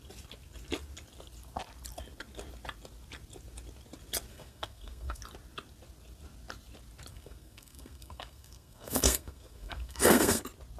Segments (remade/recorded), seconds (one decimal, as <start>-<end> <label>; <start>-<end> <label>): 0.0-4.3 recorded; 4.3-5.2 remade; 5.2-7.1 recorded; 7.1-10.4 remade; 10.4-10.8 recorded